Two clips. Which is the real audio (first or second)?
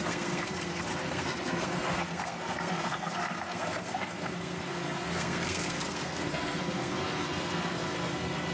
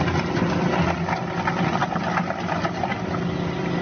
second